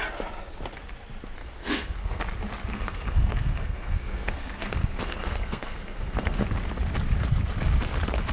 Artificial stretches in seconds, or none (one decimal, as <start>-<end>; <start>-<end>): 1.4-2.2; 2.7-6.4